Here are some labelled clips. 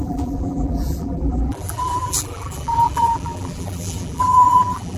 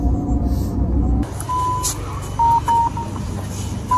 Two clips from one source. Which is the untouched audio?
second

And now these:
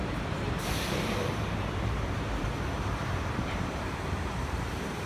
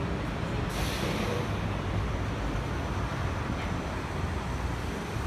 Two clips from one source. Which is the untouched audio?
second